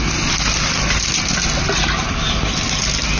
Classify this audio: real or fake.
real